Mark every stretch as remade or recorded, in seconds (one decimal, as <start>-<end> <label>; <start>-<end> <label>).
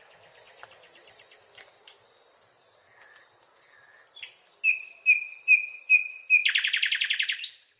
0.0-7.8 recorded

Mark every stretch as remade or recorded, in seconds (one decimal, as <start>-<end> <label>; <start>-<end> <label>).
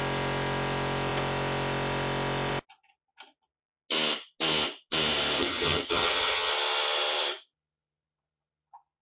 0.0-5.4 recorded; 5.4-6.5 remade; 6.5-9.0 recorded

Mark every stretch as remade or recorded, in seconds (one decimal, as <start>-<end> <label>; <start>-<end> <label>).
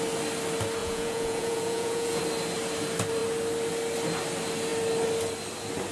0.0-0.8 recorded; 0.8-2.2 remade; 2.2-5.9 recorded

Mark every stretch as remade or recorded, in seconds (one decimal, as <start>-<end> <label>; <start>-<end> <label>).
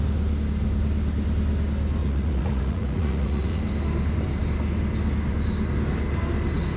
0.0-2.0 recorded; 2.0-3.6 remade; 3.6-6.8 recorded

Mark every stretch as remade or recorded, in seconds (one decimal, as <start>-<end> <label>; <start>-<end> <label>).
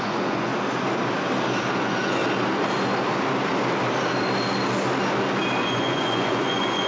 0.0-0.5 remade; 0.5-1.8 recorded; 1.8-2.2 remade; 2.2-5.6 recorded; 5.6-6.9 remade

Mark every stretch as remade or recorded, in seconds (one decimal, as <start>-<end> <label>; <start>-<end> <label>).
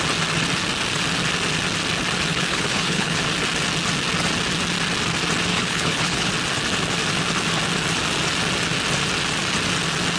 0.0-2.3 recorded; 2.3-3.2 remade; 3.2-5.5 recorded; 5.5-6.3 remade; 6.3-10.2 recorded